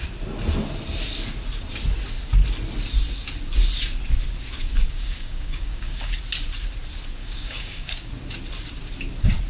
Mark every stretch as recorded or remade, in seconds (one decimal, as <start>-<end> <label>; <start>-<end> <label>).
0.0-4.6 recorded; 4.6-6.2 remade; 6.2-7.2 recorded; 7.2-8.1 remade; 8.1-9.5 recorded